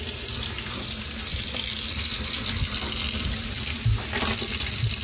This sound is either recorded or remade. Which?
recorded